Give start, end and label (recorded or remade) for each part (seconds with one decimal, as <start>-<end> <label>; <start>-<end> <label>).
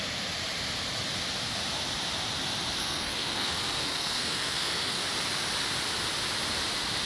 0.0-2.8 recorded; 2.8-5.0 remade; 5.0-7.1 recorded